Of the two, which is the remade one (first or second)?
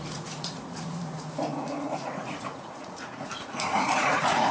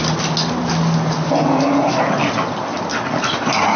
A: first